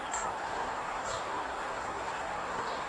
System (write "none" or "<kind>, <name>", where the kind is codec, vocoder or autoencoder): codec, SNAC